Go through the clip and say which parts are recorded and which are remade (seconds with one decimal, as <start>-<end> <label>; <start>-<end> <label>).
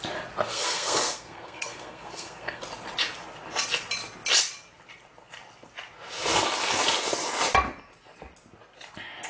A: 0.0-0.5 recorded; 0.5-2.6 remade; 2.6-9.3 recorded